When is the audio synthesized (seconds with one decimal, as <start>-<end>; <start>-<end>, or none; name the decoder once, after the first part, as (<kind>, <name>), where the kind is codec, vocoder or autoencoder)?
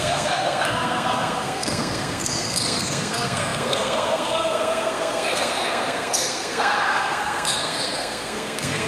0.0-8.9 (codec, SNAC)